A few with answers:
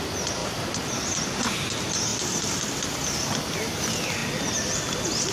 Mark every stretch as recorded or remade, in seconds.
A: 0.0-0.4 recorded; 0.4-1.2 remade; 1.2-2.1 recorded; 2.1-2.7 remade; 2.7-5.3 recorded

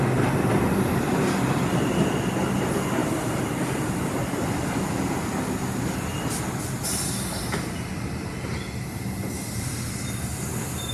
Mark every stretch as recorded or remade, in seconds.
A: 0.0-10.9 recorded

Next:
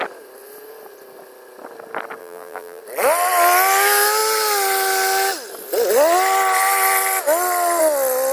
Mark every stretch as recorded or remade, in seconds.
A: 0.0-2.2 recorded; 2.2-2.8 remade; 2.8-8.3 recorded

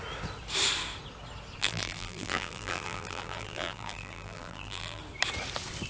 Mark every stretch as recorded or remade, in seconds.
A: 0.0-1.6 recorded; 1.6-5.0 remade; 5.0-5.9 recorded

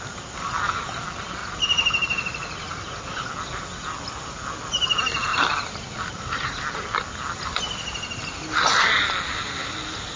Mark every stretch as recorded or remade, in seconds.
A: 0.0-1.4 recorded; 1.4-3.2 remade; 3.2-10.2 recorded

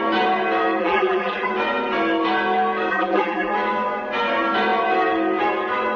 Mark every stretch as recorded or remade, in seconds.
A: 0.0-0.8 recorded; 0.8-1.5 remade; 1.5-2.9 recorded; 2.9-3.5 remade; 3.5-6.0 recorded

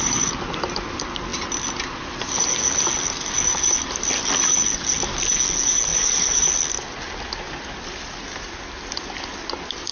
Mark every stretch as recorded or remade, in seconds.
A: 0.0-5.9 recorded; 5.9-6.6 remade; 6.6-9.9 recorded